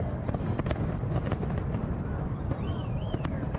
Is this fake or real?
fake